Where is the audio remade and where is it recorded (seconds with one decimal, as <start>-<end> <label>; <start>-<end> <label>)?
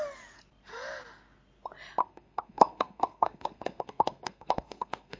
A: 0.0-2.0 recorded; 2.0-5.2 remade